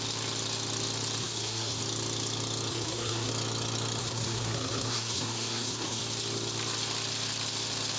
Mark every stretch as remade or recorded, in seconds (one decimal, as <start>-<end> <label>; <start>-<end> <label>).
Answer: 0.0-1.2 recorded; 1.2-1.8 remade; 1.8-2.7 recorded; 2.7-3.3 remade; 3.3-4.0 recorded; 4.0-6.0 remade; 6.0-8.0 recorded